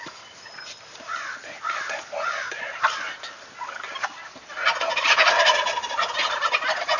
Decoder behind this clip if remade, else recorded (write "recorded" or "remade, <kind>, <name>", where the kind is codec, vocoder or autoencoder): recorded